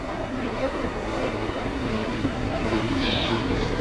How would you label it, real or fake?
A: fake